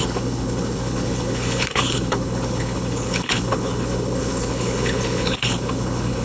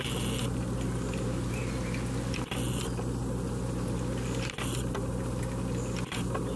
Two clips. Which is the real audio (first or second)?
second